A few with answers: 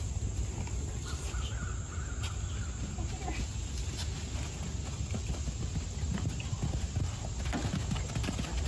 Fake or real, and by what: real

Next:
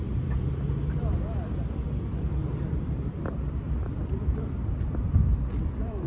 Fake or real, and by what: fake, vocoder, BigVGAN v2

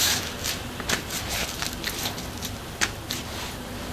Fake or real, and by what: real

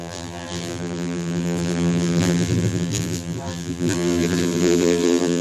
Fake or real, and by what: fake, vocoder, BigVGAN v2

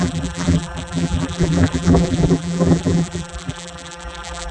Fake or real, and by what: fake, vocoder, BigVGAN v2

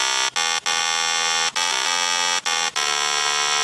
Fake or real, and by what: real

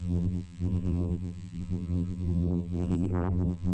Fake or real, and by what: fake, vocoder, BigVGAN v2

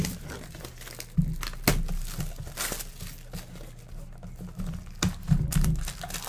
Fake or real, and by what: real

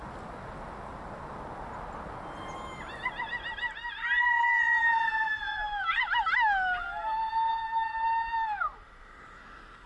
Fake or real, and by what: real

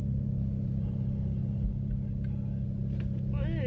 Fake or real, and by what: real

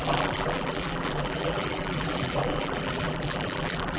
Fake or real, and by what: fake, vocoder, BigVGAN v2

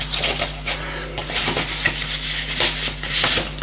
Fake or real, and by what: real